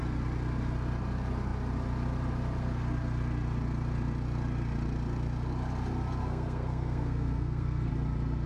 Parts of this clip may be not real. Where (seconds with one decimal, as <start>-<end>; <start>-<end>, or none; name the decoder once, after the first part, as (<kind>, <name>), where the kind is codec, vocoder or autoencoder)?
6.2-7.9 (codec, SNAC)